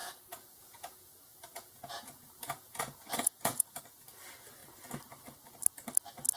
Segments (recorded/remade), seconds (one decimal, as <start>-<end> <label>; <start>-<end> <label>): 0.0-3.8 remade; 3.8-6.4 recorded